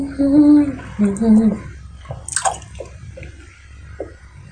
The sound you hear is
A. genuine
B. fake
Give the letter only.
A